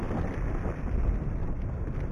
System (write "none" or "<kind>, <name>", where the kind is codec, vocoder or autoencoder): none